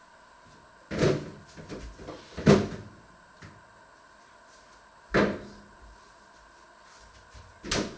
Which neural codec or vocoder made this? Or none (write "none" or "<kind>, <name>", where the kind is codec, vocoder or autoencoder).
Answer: none